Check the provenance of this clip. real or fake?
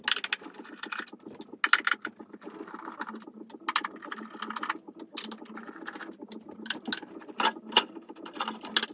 real